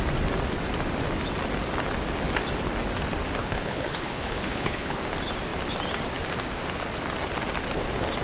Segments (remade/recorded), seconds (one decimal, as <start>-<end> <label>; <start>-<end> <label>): 0.0-3.4 recorded; 3.4-5.0 remade; 5.0-8.2 recorded